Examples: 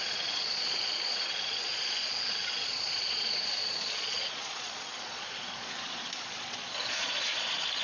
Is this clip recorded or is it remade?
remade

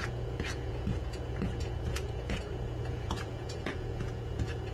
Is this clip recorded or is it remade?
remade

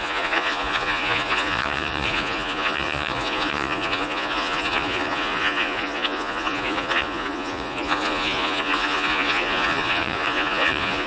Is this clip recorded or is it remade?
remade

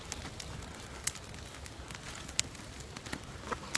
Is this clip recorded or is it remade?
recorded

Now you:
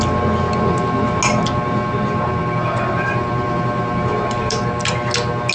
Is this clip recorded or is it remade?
recorded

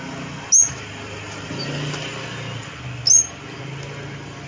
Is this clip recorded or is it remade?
recorded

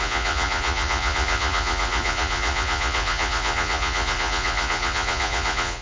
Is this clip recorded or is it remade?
remade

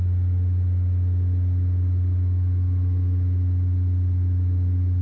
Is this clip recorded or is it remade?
recorded